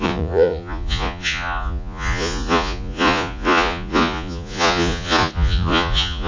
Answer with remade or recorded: remade